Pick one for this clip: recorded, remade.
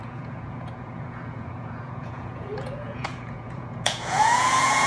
remade